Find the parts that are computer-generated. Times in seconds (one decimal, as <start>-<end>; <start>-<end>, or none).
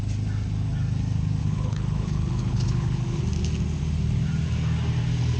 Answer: 1.4-3.2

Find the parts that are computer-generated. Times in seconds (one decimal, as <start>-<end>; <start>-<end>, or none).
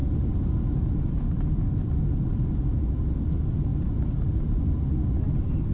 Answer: 0.0-3.0; 3.7-5.2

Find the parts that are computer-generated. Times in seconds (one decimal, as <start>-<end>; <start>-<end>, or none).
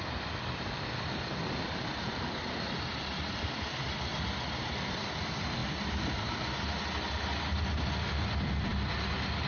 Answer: none